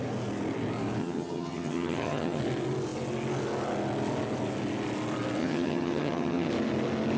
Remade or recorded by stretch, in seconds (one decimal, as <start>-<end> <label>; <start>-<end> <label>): 0.0-1.0 recorded; 1.0-2.4 remade; 2.4-5.4 recorded; 5.4-6.5 remade; 6.5-7.2 recorded